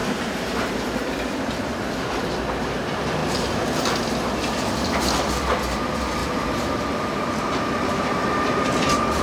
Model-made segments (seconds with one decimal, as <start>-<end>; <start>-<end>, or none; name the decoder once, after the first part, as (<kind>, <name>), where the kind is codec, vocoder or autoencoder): 0.0-1.5 (vocoder, BigVGAN v2); 6.2-9.2